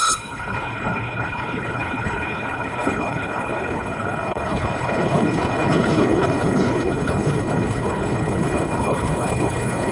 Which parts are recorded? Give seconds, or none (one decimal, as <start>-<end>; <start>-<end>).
none